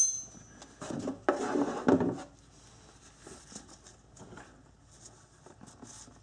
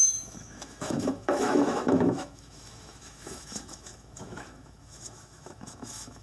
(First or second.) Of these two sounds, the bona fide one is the first